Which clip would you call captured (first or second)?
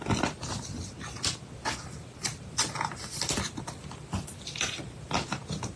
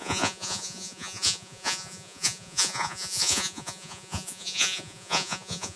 first